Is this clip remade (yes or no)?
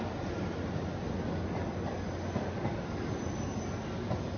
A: no